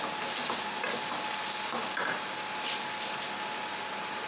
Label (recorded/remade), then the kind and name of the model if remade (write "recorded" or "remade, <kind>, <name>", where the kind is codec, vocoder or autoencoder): recorded